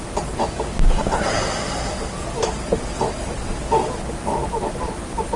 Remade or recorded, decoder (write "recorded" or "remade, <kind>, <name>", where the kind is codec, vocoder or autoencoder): recorded